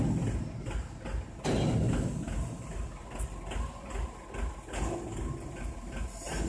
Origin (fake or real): real